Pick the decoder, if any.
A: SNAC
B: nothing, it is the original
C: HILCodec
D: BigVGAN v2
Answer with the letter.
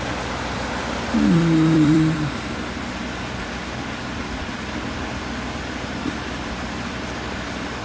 D